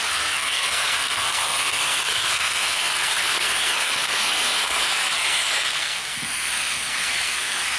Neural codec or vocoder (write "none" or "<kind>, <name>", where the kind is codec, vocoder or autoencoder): codec, SNAC